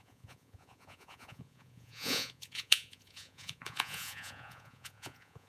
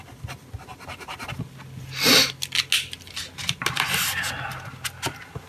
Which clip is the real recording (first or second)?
second